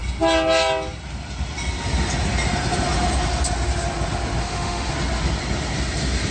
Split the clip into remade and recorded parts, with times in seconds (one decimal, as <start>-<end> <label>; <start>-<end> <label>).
0.0-4.4 recorded; 4.4-4.9 remade; 4.9-6.3 recorded